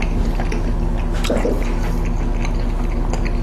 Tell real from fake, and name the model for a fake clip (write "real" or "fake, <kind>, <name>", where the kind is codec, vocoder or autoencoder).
real